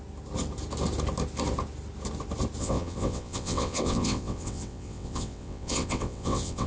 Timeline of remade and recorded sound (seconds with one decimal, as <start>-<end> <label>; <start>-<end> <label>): 0.0-2.6 recorded; 2.6-6.7 remade